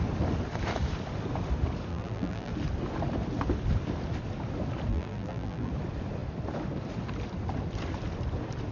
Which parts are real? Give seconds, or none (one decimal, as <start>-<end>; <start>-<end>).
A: 0.0-1.9; 2.5-4.9; 5.7-8.7